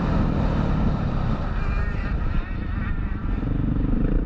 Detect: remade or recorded remade